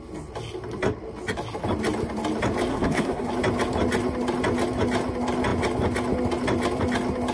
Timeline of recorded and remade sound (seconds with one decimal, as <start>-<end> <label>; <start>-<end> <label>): 0.0-2.7 recorded; 2.7-3.3 remade; 3.3-7.3 recorded